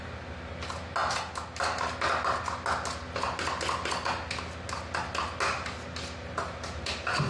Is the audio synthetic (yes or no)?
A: no